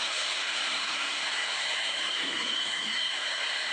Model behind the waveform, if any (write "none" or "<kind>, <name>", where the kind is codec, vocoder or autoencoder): codec, SNAC